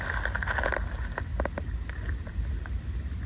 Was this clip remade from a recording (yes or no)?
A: no